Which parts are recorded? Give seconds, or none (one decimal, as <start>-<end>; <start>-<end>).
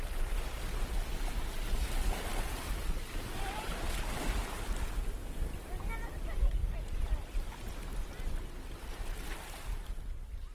0.0-2.3; 3.8-10.5